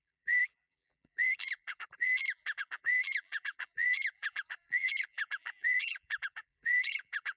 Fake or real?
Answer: fake